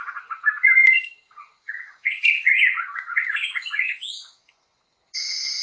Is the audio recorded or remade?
remade